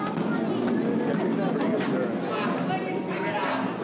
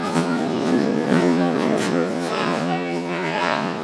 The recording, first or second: first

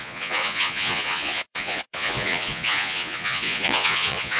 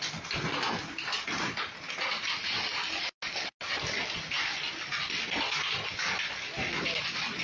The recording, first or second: second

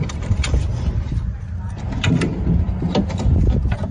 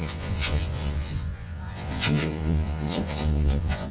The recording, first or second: first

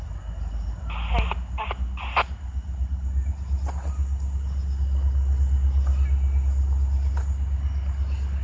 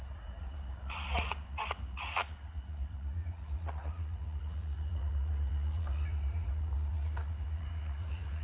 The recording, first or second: first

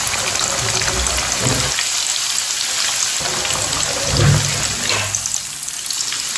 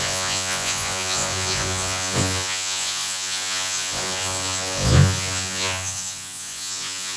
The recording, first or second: first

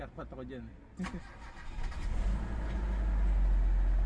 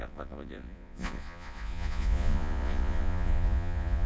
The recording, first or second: first